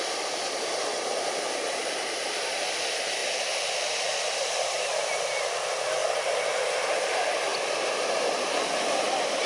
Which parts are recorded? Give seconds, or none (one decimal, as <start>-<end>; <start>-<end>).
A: 6.0-6.5